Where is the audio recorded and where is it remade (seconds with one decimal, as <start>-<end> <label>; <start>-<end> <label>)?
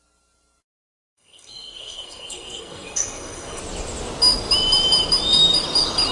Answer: 0.0-0.9 recorded; 0.9-3.6 remade; 3.6-6.1 recorded